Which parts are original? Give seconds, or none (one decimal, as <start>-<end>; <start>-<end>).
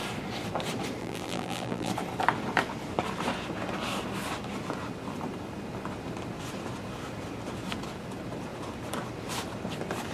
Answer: 0.0-1.0; 1.9-10.1